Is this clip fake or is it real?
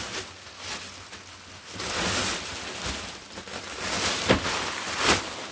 real